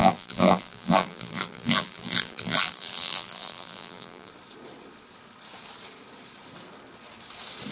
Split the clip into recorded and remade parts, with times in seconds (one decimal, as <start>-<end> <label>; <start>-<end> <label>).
0.0-4.3 remade; 4.3-7.7 recorded